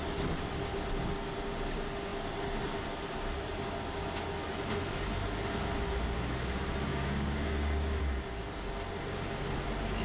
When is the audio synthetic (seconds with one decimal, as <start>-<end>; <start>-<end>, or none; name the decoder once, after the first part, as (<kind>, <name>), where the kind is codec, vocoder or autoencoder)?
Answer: 6.9-8.0 (codec, DAC)